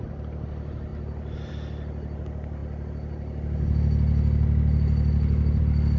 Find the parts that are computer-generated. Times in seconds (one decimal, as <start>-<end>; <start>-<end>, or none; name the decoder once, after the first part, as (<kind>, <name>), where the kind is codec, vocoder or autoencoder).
none